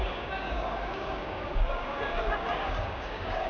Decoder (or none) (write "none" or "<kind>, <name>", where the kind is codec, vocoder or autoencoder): codec, DAC